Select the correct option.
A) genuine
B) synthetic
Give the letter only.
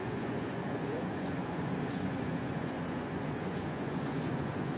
B